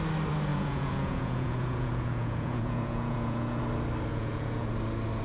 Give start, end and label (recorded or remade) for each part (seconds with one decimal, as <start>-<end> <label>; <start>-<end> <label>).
0.0-0.5 recorded; 0.5-3.6 remade; 3.6-4.1 recorded; 4.1-4.7 remade; 4.7-5.2 recorded